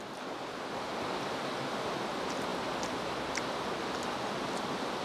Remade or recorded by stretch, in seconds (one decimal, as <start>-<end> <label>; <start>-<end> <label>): 0.0-5.0 recorded